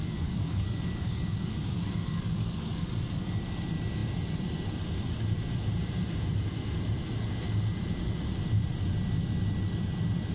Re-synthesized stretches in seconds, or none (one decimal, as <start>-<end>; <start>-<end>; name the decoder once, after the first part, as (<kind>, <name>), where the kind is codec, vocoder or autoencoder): 0.0-2.8 (codec, DAC)